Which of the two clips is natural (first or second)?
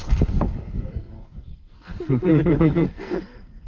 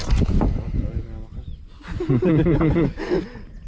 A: second